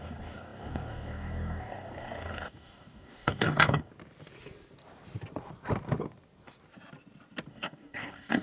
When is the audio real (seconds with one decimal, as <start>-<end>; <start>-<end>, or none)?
3.9-7.5